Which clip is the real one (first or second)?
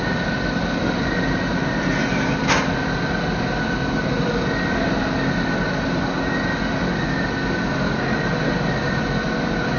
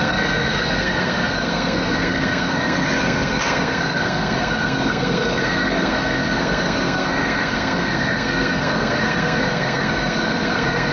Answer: first